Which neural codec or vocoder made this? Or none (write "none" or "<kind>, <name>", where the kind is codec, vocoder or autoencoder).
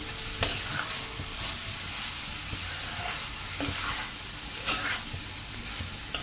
none